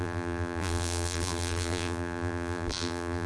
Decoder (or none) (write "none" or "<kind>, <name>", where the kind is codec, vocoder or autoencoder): vocoder, BigVGAN v2